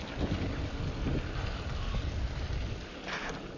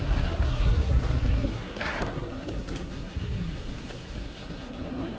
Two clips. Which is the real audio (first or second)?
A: first